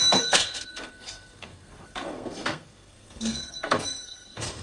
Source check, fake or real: fake